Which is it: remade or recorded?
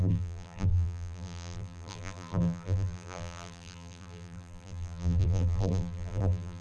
remade